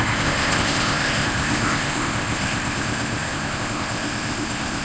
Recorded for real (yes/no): no